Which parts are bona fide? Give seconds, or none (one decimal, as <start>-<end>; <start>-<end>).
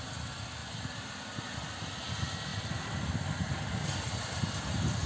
0.0-0.6; 1.4-5.1